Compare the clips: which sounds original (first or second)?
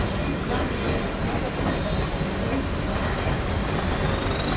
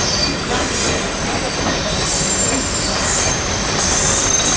first